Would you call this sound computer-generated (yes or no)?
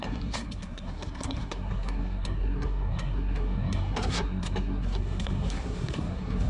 yes